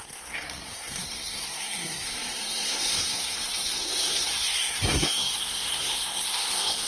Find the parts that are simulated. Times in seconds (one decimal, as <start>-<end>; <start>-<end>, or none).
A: 0.0-6.9

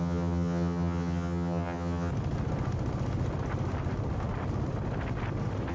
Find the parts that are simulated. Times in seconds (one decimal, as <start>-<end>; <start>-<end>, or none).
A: 0.0-2.1

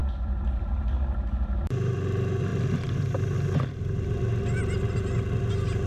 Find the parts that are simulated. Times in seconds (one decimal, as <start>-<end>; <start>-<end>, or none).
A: none

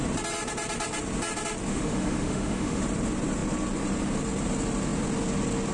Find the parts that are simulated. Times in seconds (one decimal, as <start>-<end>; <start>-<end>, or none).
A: 1.7-2.8

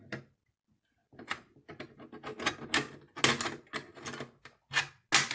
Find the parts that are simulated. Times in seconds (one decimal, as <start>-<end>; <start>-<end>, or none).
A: none

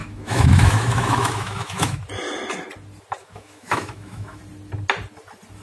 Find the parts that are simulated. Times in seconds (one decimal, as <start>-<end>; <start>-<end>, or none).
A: 0.0-2.0; 3.2-4.4

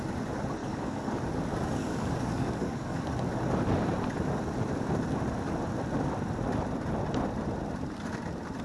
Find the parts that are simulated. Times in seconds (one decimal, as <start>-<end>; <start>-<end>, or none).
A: 0.6-1.2; 1.8-3.0

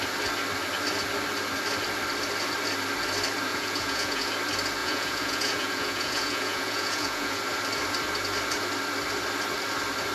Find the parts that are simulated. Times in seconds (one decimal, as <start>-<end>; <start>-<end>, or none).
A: 3.5-4.3; 4.8-7.4